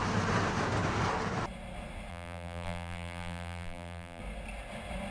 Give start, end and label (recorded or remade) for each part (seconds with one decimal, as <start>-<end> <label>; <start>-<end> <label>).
0.0-2.1 recorded; 2.1-4.2 remade; 4.2-5.1 recorded